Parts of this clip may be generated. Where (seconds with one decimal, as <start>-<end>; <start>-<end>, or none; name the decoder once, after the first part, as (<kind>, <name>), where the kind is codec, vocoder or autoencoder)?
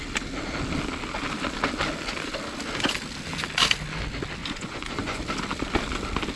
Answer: 4.4-5.2 (vocoder, Vocos)